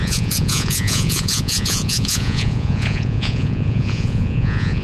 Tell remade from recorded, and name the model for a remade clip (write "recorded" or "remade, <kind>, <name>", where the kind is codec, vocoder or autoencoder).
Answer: remade, vocoder, Vocos